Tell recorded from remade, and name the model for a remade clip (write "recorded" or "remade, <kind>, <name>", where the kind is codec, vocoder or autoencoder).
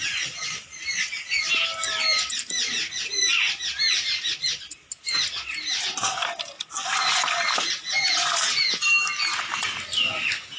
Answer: recorded